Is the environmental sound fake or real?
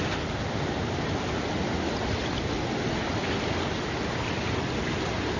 real